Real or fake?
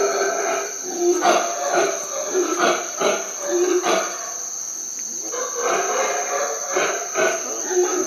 real